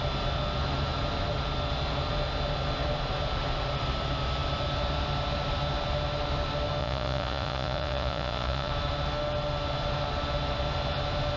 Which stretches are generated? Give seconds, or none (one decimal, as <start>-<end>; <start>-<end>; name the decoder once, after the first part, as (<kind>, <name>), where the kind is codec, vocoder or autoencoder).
6.8-8.7 (vocoder, Vocos)